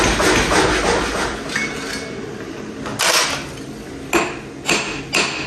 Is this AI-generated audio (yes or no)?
no